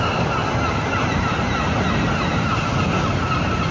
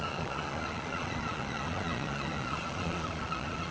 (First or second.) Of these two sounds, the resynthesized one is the second